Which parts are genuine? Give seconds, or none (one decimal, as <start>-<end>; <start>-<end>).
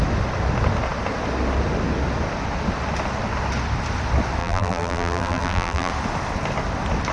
0.0-4.4; 5.9-7.1